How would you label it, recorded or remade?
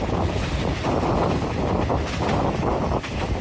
recorded